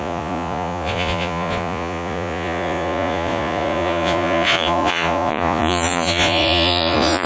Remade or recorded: remade